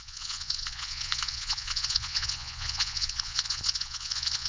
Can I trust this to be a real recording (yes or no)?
no